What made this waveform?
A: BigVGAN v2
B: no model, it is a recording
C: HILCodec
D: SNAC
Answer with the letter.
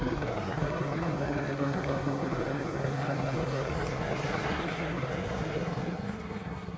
D